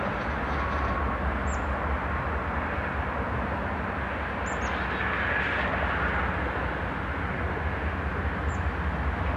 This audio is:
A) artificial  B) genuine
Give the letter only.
B